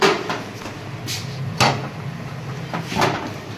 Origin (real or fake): real